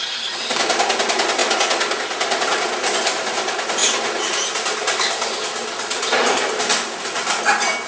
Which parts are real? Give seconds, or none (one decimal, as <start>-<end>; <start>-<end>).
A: 0.0-7.9